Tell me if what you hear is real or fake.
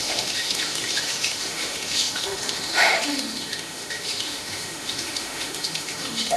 fake